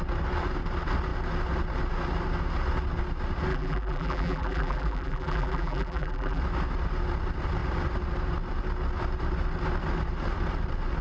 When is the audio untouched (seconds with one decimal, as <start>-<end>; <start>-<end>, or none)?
0.0-3.5; 6.4-11.0